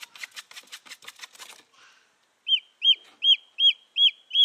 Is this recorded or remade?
recorded